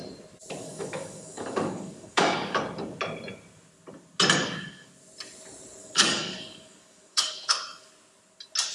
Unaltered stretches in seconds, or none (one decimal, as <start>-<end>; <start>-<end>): 0.0-0.6; 2.6-4.4; 4.9-5.8; 7.9-8.7

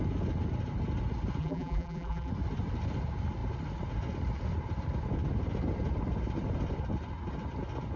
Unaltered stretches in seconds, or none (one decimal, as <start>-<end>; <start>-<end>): 0.0-1.4; 2.3-8.0

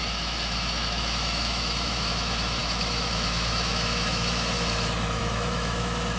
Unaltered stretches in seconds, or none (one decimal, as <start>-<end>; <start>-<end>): none

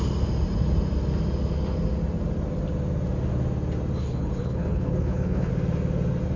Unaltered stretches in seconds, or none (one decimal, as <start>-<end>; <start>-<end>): 0.0-4.0; 5.5-6.4

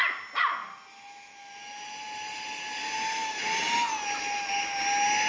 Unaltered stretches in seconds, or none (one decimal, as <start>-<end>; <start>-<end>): 0.0-5.3

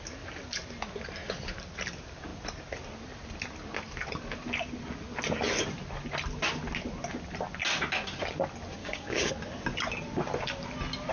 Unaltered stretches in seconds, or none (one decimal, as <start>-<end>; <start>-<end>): 0.0-8.8; 9.3-11.1

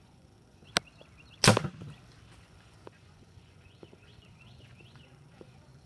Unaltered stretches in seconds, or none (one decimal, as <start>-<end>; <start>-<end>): 0.7-2.4